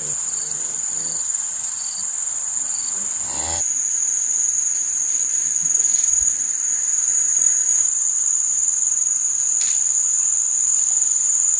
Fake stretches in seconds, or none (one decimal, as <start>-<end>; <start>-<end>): 0.0-2.0; 4.6-5.4; 7.2-11.6